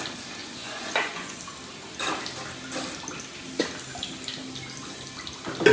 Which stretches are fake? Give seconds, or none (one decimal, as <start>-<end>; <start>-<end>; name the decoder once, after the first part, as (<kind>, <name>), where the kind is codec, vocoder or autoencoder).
0.4-1.4 (vocoder, Vocos)